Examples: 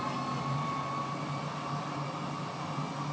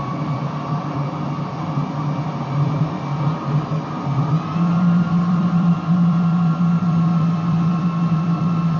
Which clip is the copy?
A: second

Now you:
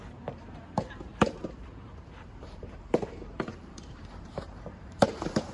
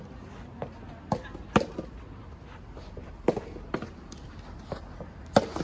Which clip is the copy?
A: first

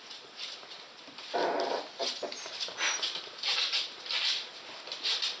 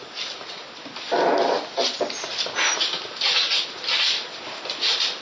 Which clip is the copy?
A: first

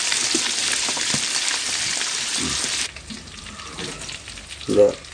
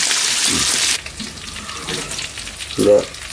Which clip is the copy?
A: first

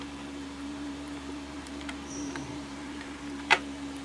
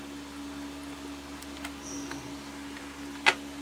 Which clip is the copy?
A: first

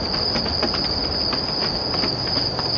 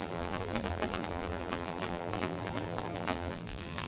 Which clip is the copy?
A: second